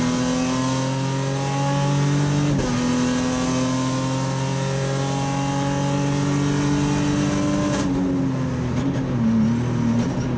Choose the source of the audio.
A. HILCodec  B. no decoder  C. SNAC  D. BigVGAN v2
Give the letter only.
B